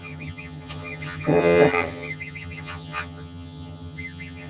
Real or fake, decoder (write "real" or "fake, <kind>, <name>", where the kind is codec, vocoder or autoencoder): fake, vocoder, HiFi-GAN